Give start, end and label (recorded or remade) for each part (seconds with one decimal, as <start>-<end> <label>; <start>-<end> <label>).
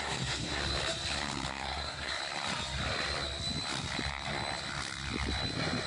0.0-0.6 remade; 0.6-1.5 recorded; 1.5-2.2 remade; 2.2-5.9 recorded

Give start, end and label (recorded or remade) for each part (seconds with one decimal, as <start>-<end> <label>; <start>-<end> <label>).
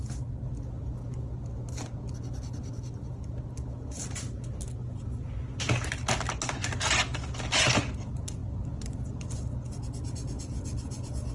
0.0-8.4 recorded; 8.4-9.3 remade; 9.3-11.3 recorded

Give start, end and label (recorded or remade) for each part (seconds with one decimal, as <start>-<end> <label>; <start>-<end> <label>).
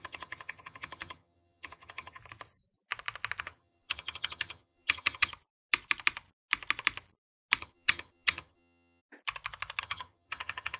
0.0-2.2 remade; 2.2-3.4 recorded; 3.4-5.3 remade; 5.3-7.6 recorded; 7.6-9.0 remade; 9.0-9.8 recorded; 9.8-10.8 remade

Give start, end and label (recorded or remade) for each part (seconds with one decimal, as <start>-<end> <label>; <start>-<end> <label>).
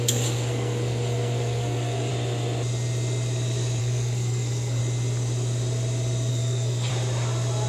0.0-2.1 remade; 2.1-3.8 recorded; 3.8-4.8 remade; 4.8-6.3 recorded; 6.3-6.9 remade; 6.9-7.7 recorded